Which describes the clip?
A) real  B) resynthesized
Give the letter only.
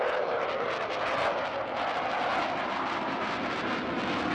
A